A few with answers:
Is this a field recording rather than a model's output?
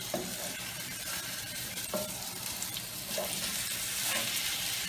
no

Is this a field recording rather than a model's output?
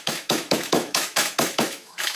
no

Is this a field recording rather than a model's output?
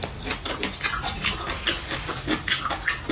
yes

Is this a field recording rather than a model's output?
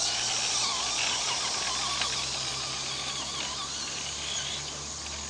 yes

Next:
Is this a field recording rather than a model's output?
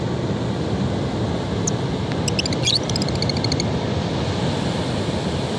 yes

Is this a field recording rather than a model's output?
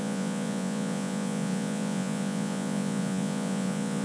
no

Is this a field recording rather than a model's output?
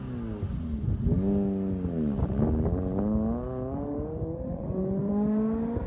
yes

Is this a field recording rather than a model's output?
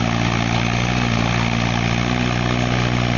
yes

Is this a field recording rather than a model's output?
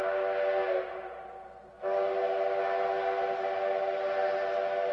yes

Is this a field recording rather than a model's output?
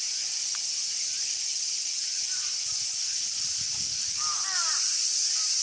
yes